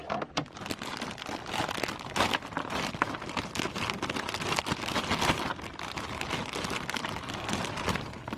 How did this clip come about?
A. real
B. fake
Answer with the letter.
A